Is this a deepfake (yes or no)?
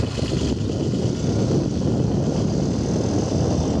no